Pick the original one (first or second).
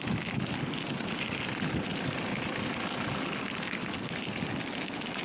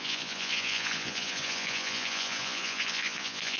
first